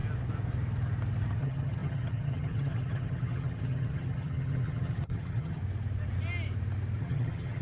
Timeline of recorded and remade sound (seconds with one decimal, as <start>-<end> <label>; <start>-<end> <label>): 0.0-1.4 recorded; 1.4-5.6 remade; 5.6-7.0 recorded; 7.0-7.6 remade